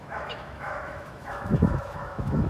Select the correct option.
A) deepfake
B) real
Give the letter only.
A